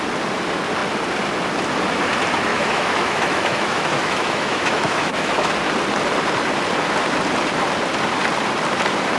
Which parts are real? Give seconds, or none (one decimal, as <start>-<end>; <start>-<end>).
0.0-2.5; 5.5-9.2